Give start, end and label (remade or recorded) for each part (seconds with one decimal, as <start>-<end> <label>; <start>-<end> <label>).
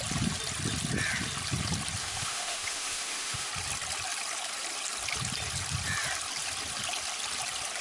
0.0-2.0 recorded; 2.0-3.5 remade; 3.5-7.8 recorded